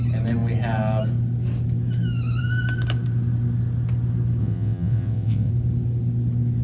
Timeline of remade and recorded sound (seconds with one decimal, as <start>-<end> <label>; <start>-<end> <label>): 0.0-4.4 recorded; 4.4-5.5 remade; 5.5-6.6 recorded